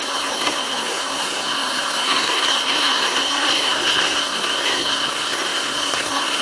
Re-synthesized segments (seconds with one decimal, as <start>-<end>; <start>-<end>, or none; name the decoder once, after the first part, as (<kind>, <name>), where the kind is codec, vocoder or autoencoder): 0.0-6.4 (codec, SNAC)